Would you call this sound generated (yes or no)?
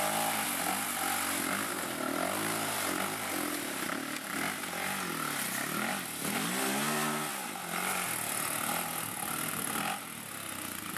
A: no